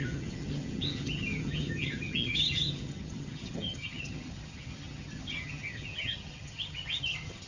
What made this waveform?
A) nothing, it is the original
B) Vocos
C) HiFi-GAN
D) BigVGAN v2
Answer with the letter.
C